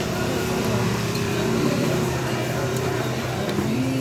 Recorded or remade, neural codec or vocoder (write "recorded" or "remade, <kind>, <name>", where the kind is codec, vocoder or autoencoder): remade, vocoder, BigVGAN v2